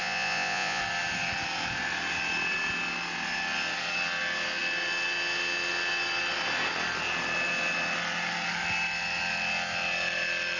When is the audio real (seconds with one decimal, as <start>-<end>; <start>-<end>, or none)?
0.8-10.6